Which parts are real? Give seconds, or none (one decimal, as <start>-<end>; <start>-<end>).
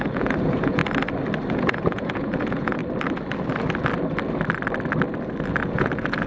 0.8-1.5; 2.8-5.6